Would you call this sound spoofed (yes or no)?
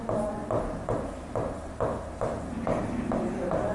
no